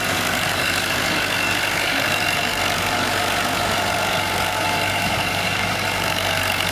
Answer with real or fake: fake